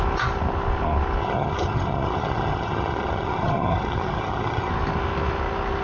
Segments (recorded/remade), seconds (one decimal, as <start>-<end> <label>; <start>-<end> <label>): 0.0-1.2 recorded; 1.2-4.7 remade; 4.7-5.8 recorded